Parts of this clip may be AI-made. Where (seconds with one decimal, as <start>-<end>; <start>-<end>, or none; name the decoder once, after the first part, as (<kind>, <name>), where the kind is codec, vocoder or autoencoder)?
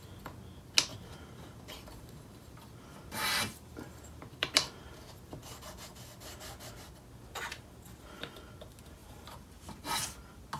0.9-5.3 (vocoder, BigVGAN v2); 9.0-10.0